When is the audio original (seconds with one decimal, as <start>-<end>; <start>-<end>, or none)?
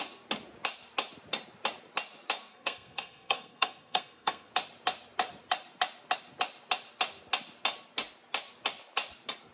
0.0-2.5; 4.5-9.5